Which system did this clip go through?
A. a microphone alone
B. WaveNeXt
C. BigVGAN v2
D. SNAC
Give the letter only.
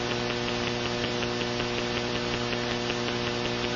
A